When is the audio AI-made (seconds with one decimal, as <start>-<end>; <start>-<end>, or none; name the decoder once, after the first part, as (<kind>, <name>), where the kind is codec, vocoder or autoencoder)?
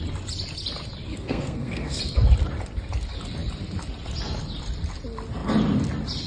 1.1-2.0 (codec, SNAC)